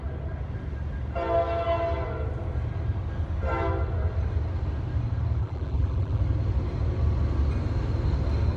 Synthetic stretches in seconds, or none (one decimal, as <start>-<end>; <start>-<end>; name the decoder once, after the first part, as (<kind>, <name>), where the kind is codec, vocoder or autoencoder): 5.4-6.2 (vocoder, BigVGAN v2)